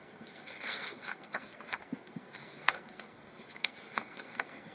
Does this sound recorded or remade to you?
remade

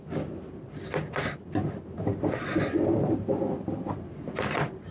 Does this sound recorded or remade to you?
recorded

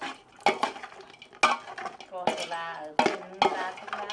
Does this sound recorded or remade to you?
recorded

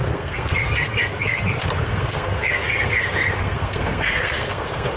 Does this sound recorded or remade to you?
remade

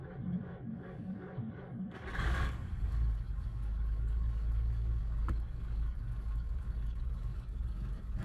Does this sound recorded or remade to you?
remade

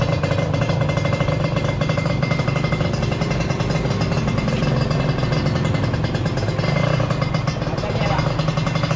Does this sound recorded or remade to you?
recorded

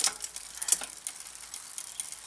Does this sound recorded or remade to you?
recorded